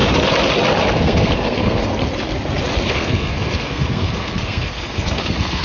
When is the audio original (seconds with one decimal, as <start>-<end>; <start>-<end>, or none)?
0.0-0.9; 1.9-2.9